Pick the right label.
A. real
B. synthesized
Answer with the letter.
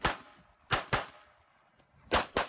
A